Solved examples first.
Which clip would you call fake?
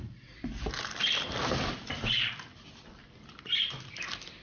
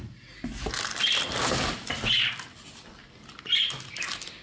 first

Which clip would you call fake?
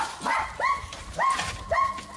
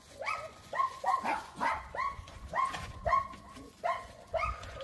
second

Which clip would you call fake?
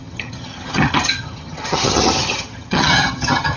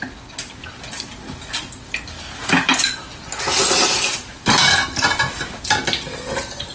first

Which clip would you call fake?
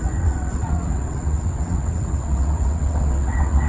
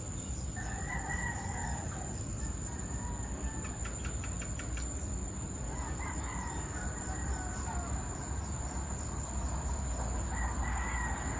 first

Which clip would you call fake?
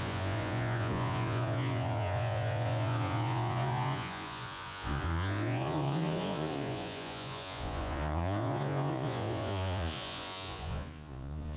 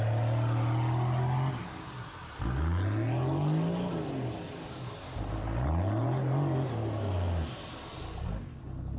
first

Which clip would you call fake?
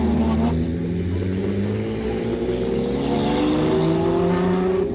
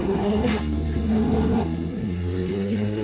second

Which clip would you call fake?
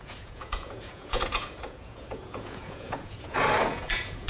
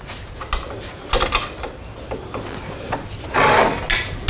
first